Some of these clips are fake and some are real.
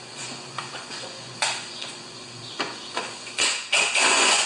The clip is fake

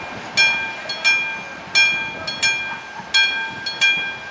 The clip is real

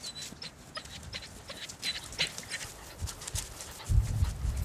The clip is real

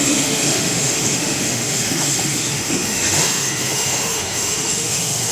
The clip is fake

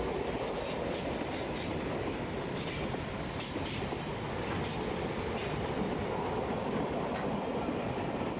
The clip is real